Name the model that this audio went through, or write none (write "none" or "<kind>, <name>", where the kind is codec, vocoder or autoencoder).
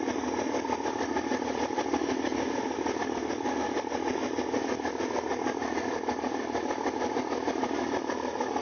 none